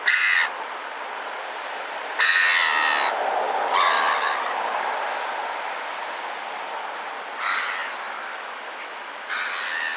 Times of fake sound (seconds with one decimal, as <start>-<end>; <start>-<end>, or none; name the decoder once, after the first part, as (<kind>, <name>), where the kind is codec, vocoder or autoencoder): 0.0-2.5 (vocoder, BigVGAN v2); 4.3-10.0